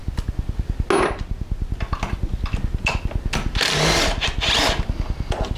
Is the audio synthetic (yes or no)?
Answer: no